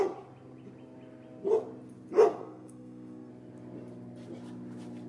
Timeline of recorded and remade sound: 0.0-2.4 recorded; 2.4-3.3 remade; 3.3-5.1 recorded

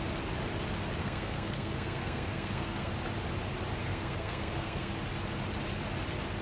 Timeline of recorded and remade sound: 0.0-1.0 recorded; 1.0-2.9 remade; 2.9-3.8 recorded; 3.8-4.9 remade; 4.9-6.4 recorded